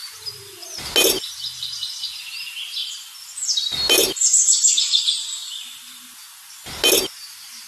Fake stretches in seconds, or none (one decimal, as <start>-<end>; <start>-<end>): none